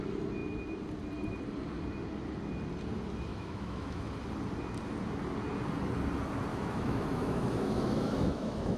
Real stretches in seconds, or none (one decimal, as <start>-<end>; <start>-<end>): 0.0-3.3; 4.1-6.5